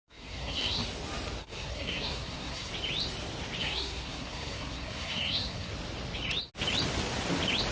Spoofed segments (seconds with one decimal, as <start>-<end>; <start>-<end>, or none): 0.0-0.8; 1.4-2.7; 3.6-5.7